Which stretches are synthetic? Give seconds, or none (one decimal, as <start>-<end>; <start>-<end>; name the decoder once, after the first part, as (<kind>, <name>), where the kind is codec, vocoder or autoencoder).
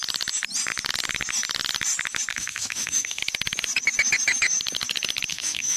2.3-3.2 (autoencoder, DAC-VAE); 5.3-5.8